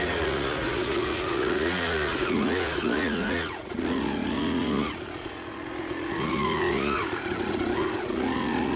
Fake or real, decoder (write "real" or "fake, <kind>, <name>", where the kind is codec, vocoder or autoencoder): fake, vocoder, Vocos